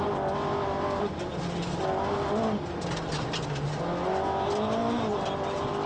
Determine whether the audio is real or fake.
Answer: real